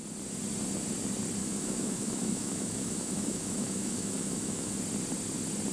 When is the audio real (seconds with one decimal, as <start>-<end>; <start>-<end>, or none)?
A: 0.0-1.4; 4.8-5.7